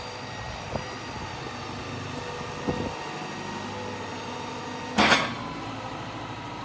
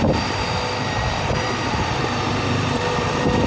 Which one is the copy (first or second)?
second